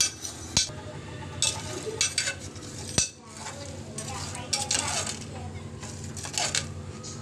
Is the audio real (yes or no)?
yes